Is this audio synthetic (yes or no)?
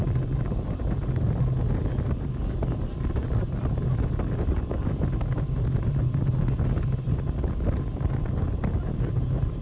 no